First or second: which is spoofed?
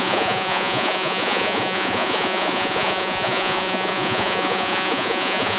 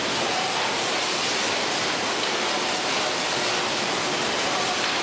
first